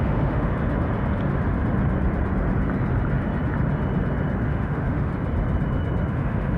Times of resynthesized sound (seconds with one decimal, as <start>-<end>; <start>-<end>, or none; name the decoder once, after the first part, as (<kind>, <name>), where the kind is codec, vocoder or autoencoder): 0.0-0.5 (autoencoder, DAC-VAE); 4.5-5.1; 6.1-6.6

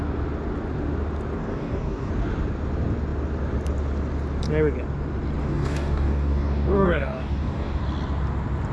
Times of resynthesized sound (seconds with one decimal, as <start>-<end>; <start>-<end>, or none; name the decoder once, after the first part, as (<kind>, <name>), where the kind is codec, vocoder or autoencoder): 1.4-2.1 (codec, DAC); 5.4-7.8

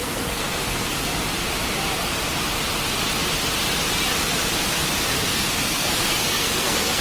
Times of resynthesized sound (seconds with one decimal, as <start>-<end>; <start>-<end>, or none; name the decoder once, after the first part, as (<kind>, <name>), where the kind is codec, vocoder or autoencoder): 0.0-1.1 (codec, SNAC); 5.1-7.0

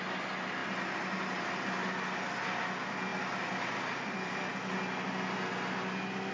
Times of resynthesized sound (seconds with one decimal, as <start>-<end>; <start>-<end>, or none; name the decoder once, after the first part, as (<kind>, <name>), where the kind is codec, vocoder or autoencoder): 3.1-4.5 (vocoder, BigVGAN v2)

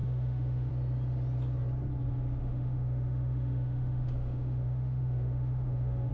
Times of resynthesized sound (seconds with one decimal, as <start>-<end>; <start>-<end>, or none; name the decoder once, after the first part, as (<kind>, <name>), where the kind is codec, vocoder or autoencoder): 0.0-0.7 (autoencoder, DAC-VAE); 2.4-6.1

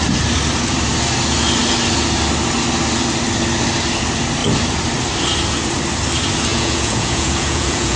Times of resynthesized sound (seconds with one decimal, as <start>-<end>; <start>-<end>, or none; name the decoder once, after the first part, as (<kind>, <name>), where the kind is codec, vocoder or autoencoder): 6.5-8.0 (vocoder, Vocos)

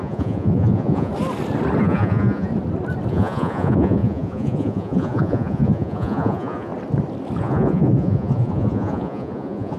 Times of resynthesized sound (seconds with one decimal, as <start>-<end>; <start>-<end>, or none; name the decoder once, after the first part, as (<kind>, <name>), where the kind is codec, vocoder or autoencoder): 0.0-1.1 (vocoder, Vocos); 1.8-2.5; 3.1-6.7; 7.4-9.8